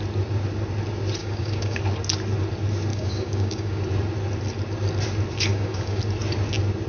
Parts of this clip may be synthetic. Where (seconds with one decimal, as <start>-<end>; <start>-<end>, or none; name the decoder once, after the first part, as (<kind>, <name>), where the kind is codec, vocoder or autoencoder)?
1.2-1.8 (codec, DAC); 2.9-3.8; 5.5-6.0